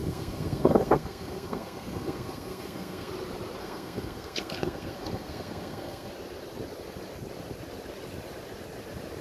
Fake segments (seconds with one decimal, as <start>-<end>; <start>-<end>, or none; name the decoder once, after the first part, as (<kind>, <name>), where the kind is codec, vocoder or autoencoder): 0.0-3.1 (codec, SNAC); 3.6-6.1